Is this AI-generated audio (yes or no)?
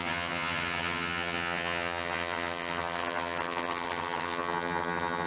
yes